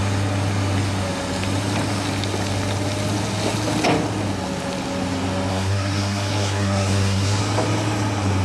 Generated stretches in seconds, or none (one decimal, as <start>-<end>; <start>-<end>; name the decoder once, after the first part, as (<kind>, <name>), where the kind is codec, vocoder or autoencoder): 5.5-7.4 (codec, SNAC)